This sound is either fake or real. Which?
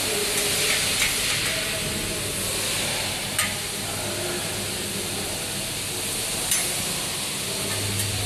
real